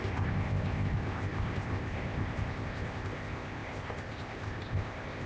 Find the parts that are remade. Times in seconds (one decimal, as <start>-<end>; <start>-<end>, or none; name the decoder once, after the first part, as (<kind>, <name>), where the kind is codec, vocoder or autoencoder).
0.0-5.3 (codec, ZipCodec)